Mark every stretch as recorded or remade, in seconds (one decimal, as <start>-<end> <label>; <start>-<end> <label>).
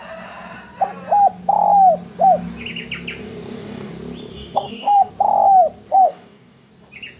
0.0-3.2 recorded; 3.2-3.9 remade; 3.9-4.3 recorded; 4.3-5.1 remade; 5.1-5.9 recorded; 5.9-6.7 remade; 6.7-7.2 recorded